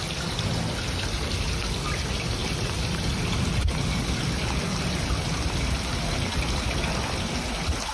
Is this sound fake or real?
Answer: real